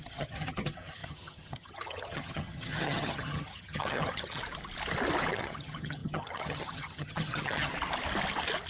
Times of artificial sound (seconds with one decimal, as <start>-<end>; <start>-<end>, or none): 0.0-4.4; 5.3-7.7

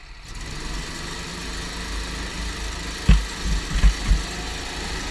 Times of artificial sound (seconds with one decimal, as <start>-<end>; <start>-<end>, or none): none